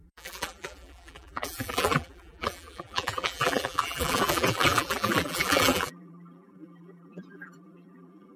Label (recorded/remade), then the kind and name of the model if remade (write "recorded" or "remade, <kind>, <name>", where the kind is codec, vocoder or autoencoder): remade, vocoder, BigVGAN v2